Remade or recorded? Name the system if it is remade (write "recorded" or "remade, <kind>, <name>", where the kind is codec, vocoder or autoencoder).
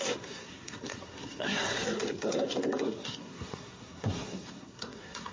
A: remade, codec, SNAC